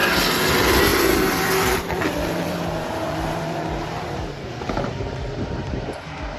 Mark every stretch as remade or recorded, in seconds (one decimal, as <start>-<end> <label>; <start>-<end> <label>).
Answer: 0.0-0.5 recorded; 0.5-6.4 remade